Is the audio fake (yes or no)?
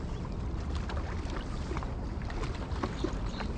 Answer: no